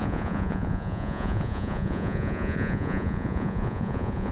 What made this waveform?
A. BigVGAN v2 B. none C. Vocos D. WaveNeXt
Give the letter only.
C